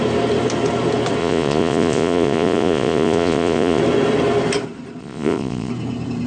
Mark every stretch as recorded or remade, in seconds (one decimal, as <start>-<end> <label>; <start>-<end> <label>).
0.0-1.2 recorded; 1.2-3.8 remade; 3.8-5.0 recorded; 5.0-5.7 remade; 5.7-6.3 recorded